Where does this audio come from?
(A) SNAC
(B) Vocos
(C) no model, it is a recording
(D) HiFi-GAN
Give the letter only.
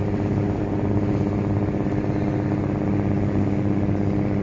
C